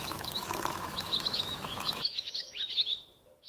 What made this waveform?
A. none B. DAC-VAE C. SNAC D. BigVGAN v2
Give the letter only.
B